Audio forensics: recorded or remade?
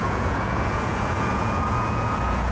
remade